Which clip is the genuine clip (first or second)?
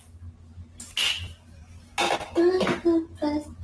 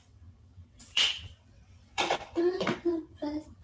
first